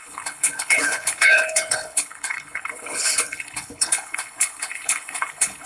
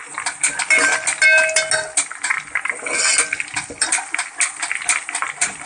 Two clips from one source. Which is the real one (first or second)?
second